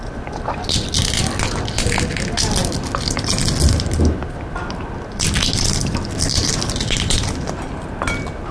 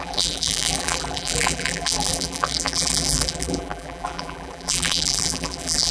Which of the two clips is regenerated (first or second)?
second